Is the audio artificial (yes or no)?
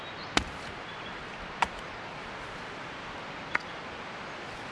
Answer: no